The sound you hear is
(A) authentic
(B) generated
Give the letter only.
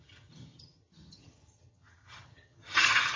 B